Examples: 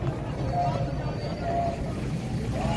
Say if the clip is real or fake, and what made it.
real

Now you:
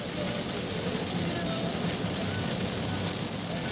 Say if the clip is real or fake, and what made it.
real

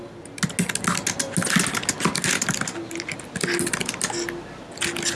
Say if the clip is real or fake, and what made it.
real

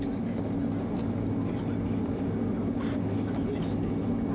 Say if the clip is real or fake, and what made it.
real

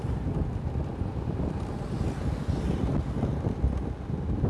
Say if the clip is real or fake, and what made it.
real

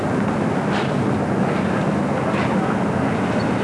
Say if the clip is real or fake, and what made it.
real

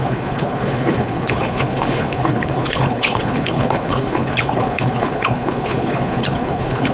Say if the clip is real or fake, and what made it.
fake, codec, HILCodec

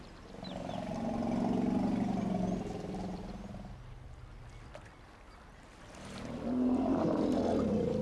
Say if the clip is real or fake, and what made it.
real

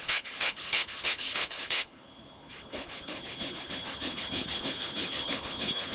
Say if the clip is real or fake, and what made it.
fake, codec, HILCodec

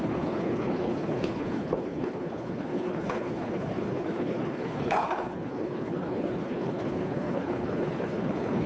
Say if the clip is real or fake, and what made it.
fake, codec, HILCodec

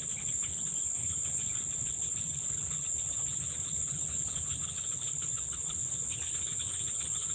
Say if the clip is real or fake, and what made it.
fake, codec, HILCodec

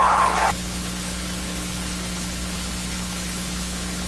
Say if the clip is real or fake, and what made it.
fake, codec, HILCodec